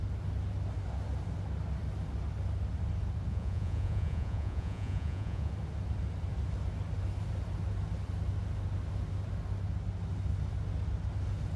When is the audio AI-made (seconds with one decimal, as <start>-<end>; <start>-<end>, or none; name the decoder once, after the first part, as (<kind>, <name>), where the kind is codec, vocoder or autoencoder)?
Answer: 3.3-5.5 (vocoder, Vocos)